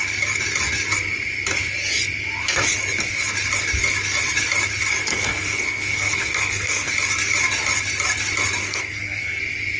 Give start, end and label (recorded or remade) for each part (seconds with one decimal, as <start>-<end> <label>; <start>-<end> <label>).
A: 0.0-5.1 recorded; 5.1-6.9 remade; 6.9-8.6 recorded; 8.6-9.4 remade; 9.4-9.8 recorded